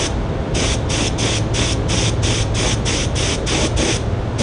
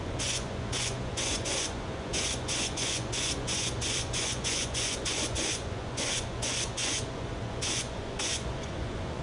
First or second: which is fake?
second